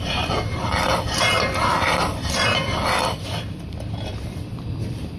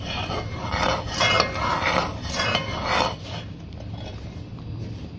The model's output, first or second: first